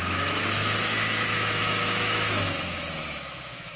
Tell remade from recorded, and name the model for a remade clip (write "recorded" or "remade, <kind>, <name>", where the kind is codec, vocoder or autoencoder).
remade, autoencoder, DAC-VAE